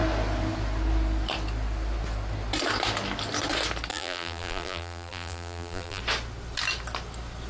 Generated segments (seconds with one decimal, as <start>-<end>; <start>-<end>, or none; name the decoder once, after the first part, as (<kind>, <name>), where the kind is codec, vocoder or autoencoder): 3.9-6.0 (vocoder, BigVGAN v2)